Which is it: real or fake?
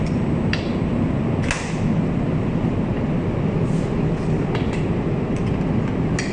real